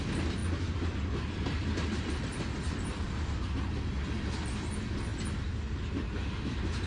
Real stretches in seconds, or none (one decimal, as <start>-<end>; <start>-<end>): 0.0-0.4; 4.3-6.9